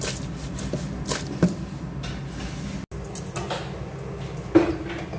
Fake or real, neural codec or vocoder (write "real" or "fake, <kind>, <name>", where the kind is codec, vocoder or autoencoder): real